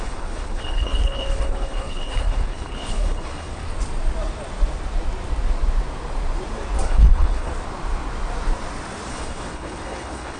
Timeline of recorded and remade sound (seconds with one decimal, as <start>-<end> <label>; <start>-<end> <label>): 0.0-3.6 remade; 3.6-6.8 recorded; 6.8-7.5 remade; 7.5-9.1 recorded; 9.1-10.4 remade